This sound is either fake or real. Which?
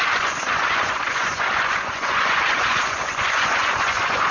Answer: fake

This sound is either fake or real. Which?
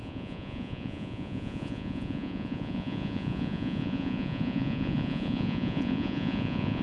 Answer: fake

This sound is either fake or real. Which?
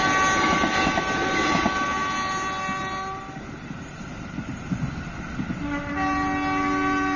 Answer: real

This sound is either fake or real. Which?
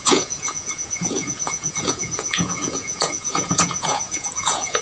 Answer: fake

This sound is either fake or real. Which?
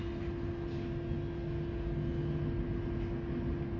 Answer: real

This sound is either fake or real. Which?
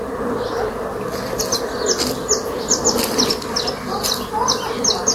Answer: real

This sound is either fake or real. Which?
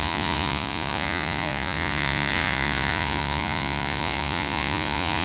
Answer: fake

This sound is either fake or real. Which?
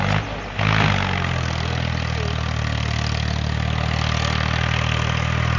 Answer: real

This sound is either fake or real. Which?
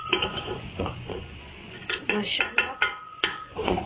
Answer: fake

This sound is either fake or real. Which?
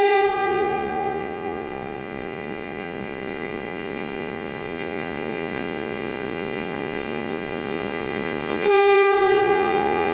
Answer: fake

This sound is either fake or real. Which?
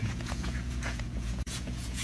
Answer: fake